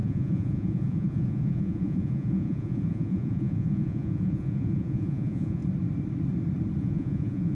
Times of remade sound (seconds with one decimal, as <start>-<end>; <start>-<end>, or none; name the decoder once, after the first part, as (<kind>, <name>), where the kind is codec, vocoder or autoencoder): 0.0-5.6 (vocoder, Vocos); 6.8-7.5